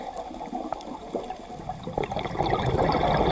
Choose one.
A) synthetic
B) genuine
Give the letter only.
B